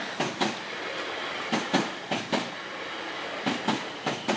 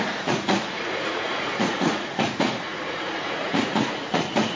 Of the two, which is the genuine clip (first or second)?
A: first